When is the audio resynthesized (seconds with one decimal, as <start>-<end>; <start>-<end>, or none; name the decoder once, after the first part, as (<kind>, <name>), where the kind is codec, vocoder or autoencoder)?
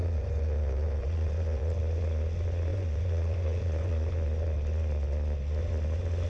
0.0-1.8 (vocoder, Vocos); 2.7-4.1